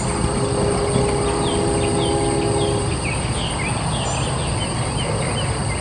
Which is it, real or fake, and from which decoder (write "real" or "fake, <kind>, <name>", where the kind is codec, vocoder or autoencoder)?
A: real